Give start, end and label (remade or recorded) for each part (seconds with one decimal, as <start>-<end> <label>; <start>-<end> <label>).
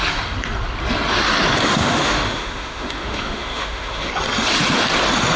0.0-1.7 recorded; 1.7-4.1 remade; 4.1-5.4 recorded